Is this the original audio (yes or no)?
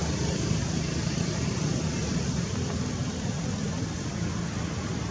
yes